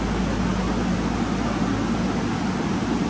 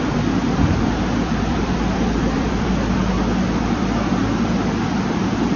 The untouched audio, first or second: first